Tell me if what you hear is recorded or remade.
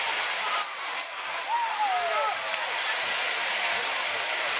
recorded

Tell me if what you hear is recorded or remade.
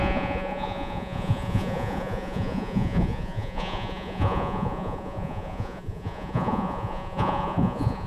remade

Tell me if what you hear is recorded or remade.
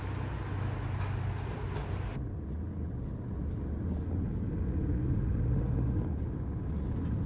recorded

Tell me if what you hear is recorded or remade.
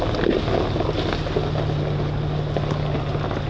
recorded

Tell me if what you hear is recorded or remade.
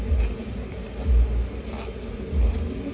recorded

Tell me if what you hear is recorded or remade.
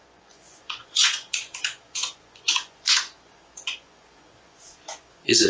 remade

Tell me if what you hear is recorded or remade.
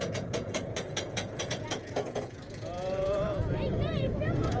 remade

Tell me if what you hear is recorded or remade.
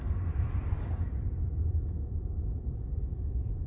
recorded